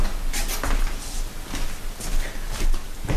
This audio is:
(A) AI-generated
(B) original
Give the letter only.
B